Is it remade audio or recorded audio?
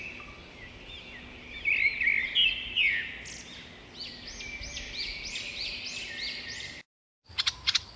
recorded